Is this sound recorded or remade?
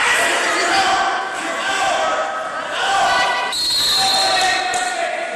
recorded